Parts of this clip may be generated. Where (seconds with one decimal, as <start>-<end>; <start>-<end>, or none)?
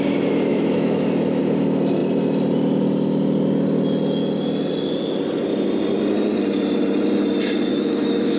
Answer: 0.5-1.4; 7.7-8.4